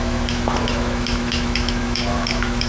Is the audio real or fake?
fake